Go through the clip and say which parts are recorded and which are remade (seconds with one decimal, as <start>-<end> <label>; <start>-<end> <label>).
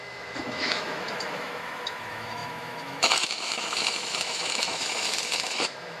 0.0-6.0 remade